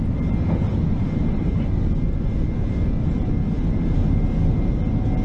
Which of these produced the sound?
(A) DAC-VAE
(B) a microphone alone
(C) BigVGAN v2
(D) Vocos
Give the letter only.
B